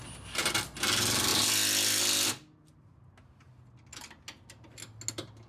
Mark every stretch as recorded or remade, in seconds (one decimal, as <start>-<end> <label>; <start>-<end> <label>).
0.0-5.5 recorded